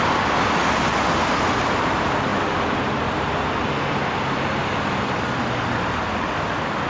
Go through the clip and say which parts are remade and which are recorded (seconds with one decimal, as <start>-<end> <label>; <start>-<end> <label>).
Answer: 0.0-6.9 recorded